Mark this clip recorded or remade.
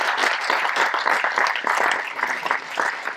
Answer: recorded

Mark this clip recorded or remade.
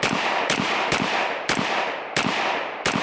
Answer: recorded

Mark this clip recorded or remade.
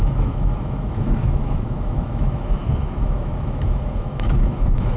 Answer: remade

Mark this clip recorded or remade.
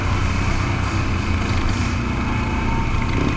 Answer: recorded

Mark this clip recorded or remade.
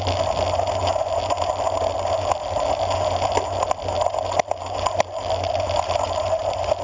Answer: recorded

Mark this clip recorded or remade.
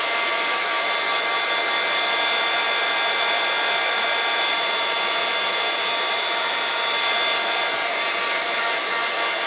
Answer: recorded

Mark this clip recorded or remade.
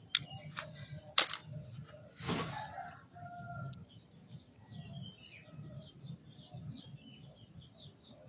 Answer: recorded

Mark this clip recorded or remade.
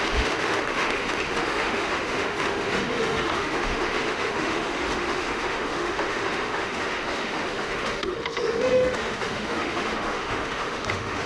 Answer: remade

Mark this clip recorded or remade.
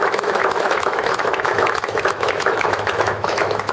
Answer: remade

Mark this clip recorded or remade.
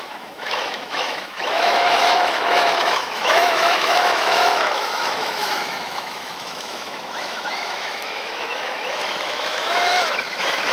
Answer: remade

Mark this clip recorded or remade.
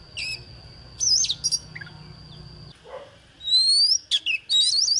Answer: recorded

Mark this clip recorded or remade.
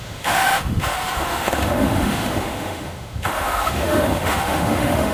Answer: remade